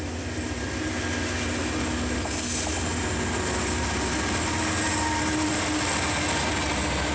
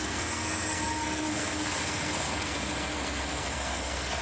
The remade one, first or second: second